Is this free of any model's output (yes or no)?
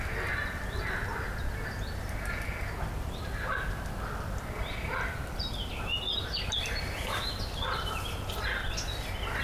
yes